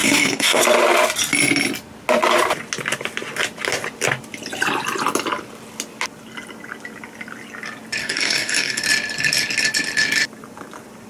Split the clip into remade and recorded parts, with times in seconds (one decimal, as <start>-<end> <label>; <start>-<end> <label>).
0.0-0.6 remade; 0.6-8.0 recorded; 8.0-8.8 remade; 8.8-11.1 recorded